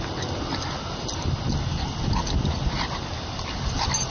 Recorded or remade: recorded